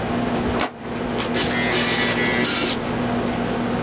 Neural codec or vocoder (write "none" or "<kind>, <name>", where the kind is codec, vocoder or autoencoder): none